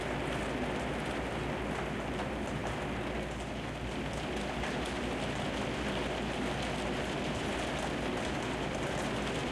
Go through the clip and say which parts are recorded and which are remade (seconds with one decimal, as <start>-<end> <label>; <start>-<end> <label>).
0.0-9.5 recorded